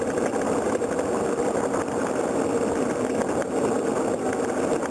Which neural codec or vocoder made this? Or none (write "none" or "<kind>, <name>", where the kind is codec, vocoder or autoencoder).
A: none